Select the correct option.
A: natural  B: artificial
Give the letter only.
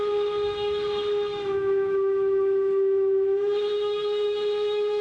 B